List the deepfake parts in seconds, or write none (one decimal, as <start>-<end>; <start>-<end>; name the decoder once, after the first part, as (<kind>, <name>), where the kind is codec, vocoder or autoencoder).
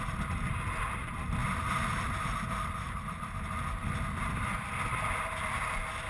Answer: none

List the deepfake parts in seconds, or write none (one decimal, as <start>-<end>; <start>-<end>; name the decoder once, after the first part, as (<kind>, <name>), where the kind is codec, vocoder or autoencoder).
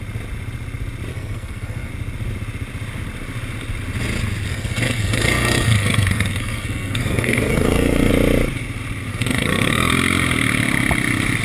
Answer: 1.1-1.9 (codec, SNAC); 4.5-8.1; 9.1-9.9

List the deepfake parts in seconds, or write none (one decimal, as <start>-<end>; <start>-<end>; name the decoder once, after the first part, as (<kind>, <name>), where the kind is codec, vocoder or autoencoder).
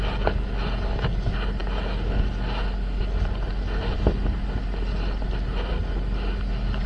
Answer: none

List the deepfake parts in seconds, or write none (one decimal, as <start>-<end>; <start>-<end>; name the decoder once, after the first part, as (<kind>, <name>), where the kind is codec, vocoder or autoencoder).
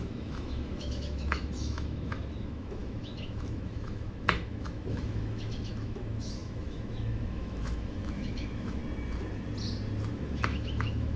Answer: 0.0-8.8 (autoencoder, DAC-VAE); 10.1-11.2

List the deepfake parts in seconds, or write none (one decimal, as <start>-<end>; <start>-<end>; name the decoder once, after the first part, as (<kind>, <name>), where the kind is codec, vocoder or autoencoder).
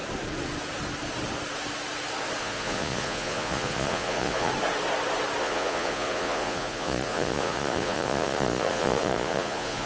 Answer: 2.4-4.5 (vocoder, Vocos); 5.4-9.9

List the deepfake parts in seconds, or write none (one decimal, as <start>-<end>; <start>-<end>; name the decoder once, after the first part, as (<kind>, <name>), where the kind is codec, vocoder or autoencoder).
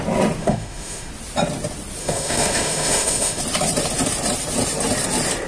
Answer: 0.4-1.1 (autoencoder, DAC-VAE); 2.0-3.4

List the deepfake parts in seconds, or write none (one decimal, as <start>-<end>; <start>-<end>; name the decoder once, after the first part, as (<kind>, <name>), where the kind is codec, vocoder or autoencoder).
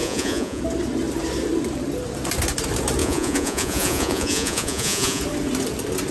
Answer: 0.0-0.6 (vocoder, Vocos); 3.0-5.2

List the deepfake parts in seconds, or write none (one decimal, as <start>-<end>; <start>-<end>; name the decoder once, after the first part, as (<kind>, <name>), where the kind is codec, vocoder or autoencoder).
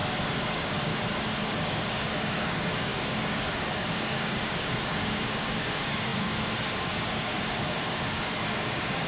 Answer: 0.5-0.9 (codec, DAC); 1.5-9.1